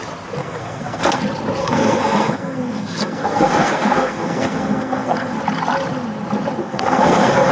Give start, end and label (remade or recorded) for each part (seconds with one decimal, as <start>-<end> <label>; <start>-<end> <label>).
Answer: 0.0-0.4 recorded; 0.4-1.2 remade; 1.2-1.6 recorded; 1.6-5.4 remade; 5.4-6.6 recorded; 6.6-7.5 remade